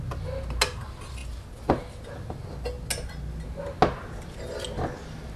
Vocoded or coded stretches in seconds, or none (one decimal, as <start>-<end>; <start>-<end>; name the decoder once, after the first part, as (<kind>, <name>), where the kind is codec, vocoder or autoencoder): none